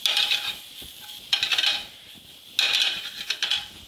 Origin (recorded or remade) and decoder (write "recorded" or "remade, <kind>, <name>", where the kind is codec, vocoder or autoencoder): recorded